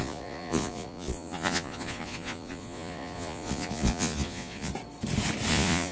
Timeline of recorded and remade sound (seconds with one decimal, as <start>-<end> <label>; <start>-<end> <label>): 0.0-4.7 remade; 4.7-5.5 recorded; 5.5-5.9 remade